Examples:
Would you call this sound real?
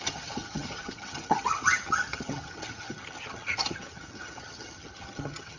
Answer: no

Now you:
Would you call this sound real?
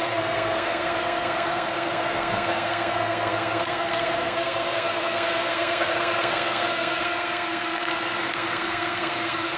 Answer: no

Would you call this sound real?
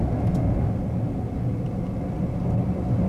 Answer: yes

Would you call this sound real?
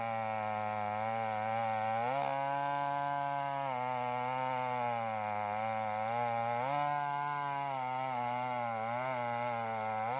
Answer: yes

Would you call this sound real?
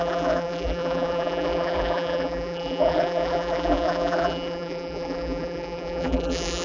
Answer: no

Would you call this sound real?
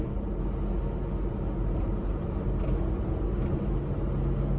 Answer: yes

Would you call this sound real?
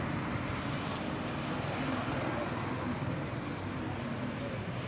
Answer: yes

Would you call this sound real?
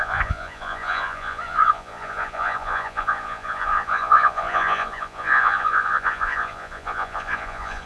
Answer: no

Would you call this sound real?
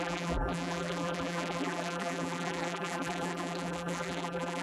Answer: no